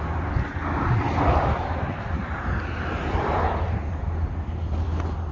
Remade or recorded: recorded